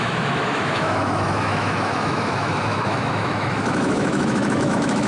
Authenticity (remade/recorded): remade